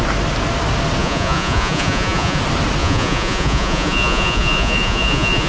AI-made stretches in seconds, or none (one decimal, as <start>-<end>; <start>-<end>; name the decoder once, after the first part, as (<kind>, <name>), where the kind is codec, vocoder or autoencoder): 1.0-2.4 (vocoder, Vocos); 2.8-5.5